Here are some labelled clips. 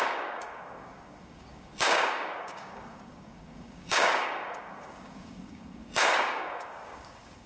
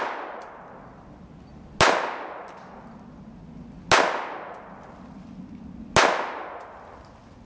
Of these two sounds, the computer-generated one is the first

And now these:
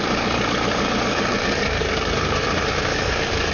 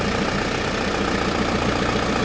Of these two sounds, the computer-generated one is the first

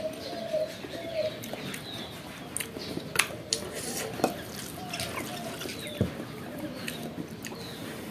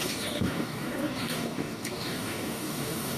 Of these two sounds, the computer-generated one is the second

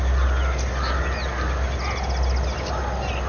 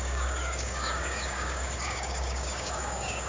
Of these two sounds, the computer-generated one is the second